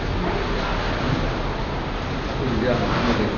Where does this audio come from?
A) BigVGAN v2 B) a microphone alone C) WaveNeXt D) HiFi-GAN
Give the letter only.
B